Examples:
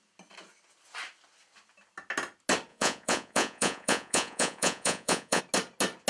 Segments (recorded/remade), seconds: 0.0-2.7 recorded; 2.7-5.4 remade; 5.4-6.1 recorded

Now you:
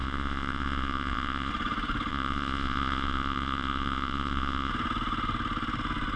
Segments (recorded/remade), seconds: 0.0-1.5 remade; 1.5-2.1 recorded; 2.1-4.7 remade; 4.7-6.2 recorded

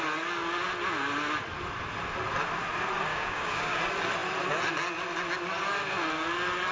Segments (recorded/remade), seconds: 0.0-3.1 recorded; 3.1-3.8 remade; 3.8-6.7 recorded

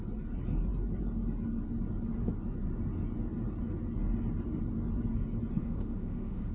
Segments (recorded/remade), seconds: 0.0-5.6 recorded; 5.6-6.5 remade

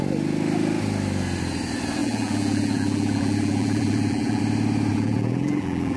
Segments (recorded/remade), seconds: 0.0-2.0 recorded; 2.0-4.4 remade; 4.4-4.9 recorded; 4.9-6.0 remade